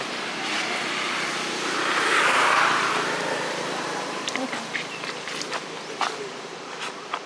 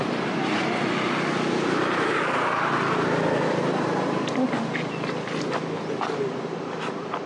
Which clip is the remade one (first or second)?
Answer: first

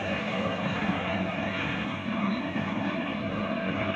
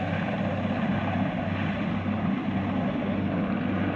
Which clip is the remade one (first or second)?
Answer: first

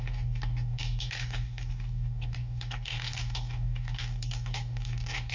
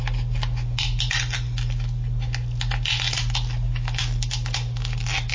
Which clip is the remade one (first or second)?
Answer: first